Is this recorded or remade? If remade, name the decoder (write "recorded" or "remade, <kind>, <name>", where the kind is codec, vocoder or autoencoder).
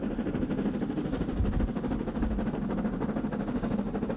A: recorded